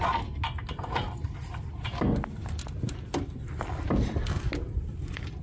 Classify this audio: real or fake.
real